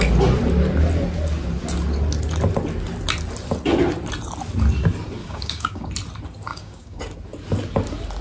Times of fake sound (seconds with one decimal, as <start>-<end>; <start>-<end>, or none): 5.2-5.9; 6.5-7.0